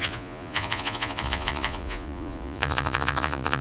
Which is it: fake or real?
fake